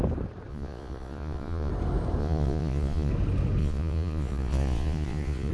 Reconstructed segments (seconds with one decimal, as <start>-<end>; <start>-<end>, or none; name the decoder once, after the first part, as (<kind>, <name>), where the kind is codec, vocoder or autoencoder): 0.5-1.7 (vocoder, Vocos); 2.2-3.1; 3.6-5.5